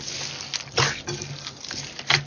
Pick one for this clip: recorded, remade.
recorded